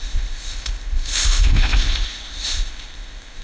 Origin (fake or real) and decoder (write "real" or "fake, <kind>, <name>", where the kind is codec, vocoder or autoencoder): fake, codec, ZipCodec